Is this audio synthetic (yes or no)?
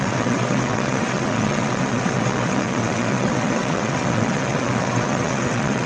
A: yes